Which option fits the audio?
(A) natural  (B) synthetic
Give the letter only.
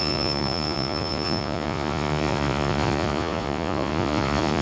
B